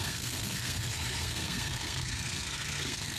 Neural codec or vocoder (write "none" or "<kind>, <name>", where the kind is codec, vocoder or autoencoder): codec, SNAC